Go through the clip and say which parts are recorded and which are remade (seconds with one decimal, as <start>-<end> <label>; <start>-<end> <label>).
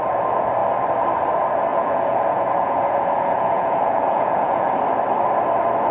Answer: 0.0-1.7 recorded; 1.7-4.7 remade; 4.7-5.9 recorded